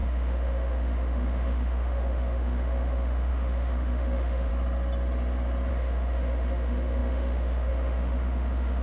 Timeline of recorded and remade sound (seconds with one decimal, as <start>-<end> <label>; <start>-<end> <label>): 0.0-4.5 remade; 4.5-5.7 recorded; 5.7-8.8 remade